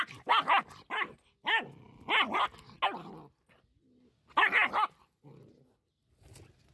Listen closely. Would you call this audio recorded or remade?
recorded